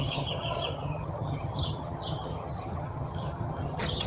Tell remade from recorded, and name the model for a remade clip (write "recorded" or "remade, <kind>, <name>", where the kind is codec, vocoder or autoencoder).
remade, vocoder, HiFi-GAN